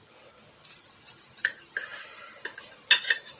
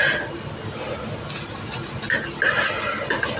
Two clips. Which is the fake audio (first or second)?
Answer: first